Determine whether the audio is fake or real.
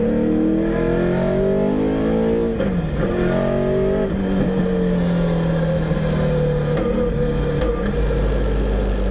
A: real